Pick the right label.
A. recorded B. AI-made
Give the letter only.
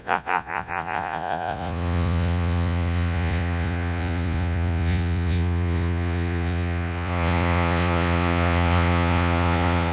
B